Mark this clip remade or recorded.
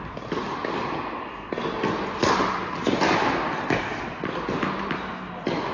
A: recorded